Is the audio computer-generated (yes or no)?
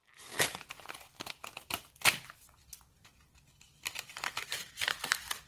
yes